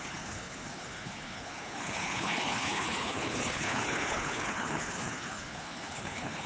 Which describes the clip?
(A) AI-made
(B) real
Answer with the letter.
A